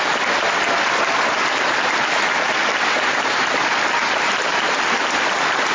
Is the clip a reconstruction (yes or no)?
no